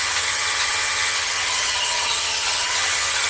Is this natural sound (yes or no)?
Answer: no